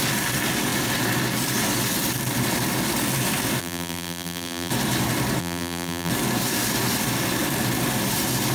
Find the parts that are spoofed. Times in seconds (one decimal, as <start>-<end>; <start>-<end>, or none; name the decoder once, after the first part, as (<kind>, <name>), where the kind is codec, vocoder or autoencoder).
3.6-4.7 (vocoder, BigVGAN v2); 5.4-6.1